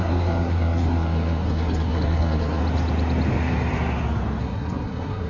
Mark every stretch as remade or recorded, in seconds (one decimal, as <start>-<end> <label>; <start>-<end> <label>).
0.0-2.6 remade; 2.6-4.4 recorded; 4.4-5.3 remade